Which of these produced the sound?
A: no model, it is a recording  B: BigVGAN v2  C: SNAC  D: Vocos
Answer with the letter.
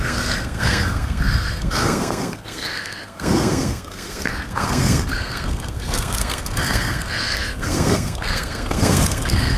C